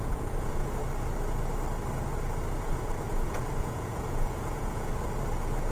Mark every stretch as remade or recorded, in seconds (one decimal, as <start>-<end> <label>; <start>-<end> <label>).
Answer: 0.0-0.8 remade; 0.8-2.6 recorded; 2.6-4.9 remade; 4.9-5.7 recorded